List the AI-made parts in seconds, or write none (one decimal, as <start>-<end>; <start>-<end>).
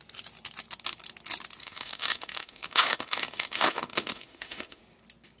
1.6-4.8